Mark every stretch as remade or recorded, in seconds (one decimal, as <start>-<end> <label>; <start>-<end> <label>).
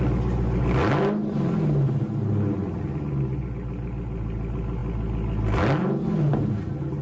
0.0-7.0 recorded